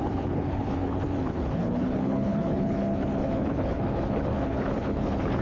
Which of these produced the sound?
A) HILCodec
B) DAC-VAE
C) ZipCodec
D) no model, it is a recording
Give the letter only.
A